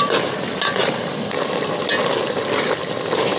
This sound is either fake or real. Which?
real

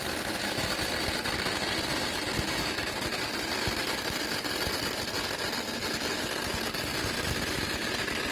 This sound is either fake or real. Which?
real